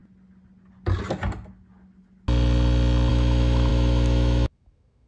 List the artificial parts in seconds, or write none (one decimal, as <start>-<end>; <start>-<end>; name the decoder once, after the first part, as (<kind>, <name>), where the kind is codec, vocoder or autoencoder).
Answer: 3.1-5.1 (autoencoder, DAC-VAE)